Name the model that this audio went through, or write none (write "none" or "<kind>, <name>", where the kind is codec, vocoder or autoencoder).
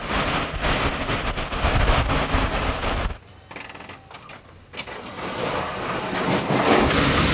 none